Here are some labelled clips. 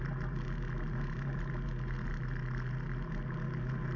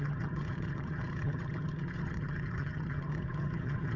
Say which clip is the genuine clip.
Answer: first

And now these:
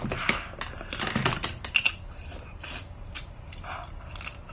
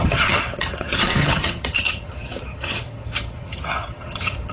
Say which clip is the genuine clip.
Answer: first